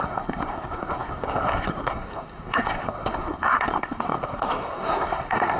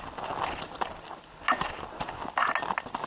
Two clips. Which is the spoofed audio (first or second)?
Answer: first